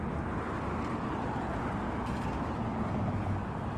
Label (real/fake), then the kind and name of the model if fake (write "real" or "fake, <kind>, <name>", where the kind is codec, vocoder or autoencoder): real